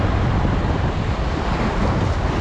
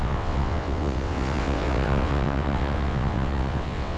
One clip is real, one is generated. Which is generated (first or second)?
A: second